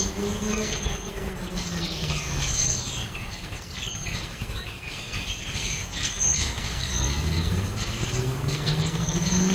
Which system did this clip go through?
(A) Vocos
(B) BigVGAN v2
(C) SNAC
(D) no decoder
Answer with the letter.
C